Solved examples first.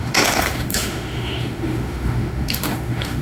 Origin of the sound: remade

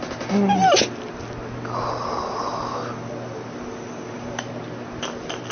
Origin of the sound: recorded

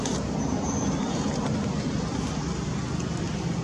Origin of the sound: recorded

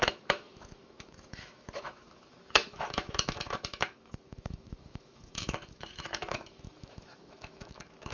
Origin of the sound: remade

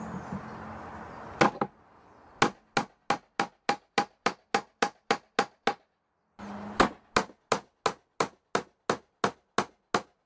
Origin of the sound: recorded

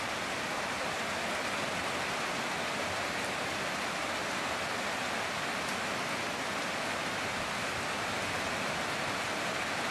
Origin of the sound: recorded